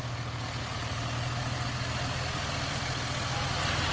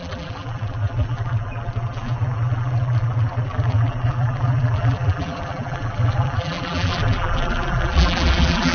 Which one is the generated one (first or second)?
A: second